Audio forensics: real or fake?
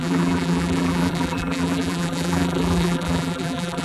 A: fake